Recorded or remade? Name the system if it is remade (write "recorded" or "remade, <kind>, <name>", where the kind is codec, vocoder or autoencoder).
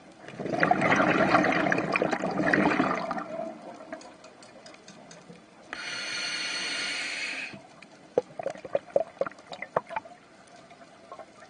recorded